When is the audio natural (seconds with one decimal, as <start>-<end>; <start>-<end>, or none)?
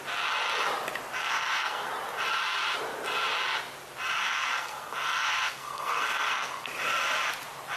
0.0-1.2; 1.9-4.2; 6.6-7.8